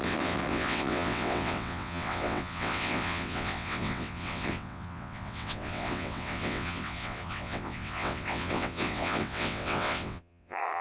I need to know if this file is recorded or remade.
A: remade